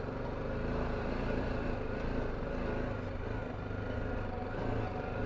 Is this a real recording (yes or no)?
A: yes